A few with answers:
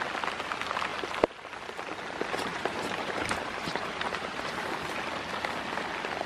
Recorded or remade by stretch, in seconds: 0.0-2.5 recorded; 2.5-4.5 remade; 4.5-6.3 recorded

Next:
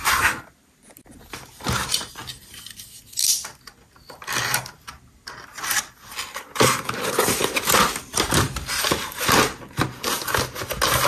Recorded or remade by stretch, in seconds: 0.0-11.1 recorded

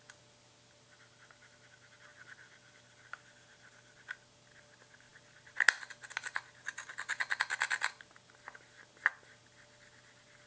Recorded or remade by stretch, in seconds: 0.0-10.5 recorded

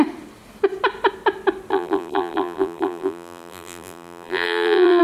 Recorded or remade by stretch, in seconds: 0.0-1.7 recorded; 1.7-5.0 remade